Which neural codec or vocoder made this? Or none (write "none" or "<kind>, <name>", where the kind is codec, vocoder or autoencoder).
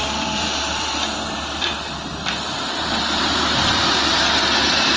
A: vocoder, BigVGAN v2